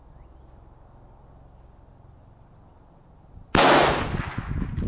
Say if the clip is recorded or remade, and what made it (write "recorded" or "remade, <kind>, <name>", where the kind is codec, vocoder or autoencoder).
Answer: recorded